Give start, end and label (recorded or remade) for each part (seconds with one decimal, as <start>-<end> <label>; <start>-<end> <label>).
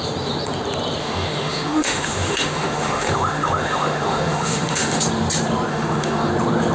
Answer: 0.0-1.0 recorded; 1.0-5.0 remade; 5.0-5.7 recorded; 5.7-6.3 remade; 6.3-6.7 recorded